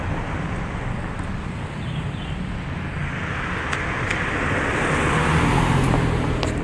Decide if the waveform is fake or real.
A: real